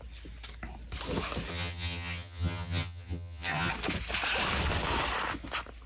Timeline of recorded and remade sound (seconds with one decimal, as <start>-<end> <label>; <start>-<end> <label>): 0.0-1.5 recorded; 1.5-3.7 remade; 3.7-5.9 recorded